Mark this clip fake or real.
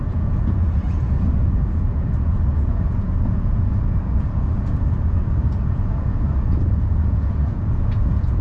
fake